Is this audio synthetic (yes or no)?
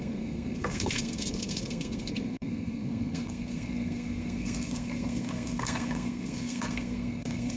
yes